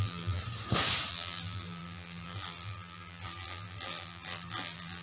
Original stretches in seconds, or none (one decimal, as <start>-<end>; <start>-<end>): 0.4-1.1